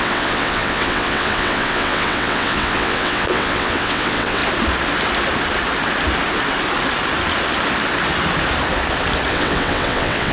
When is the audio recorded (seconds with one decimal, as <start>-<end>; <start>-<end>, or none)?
4.4-9.3